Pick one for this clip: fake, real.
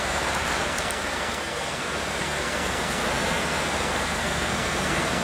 fake